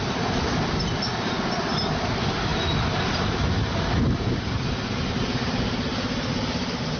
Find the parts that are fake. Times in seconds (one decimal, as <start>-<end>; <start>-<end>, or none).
none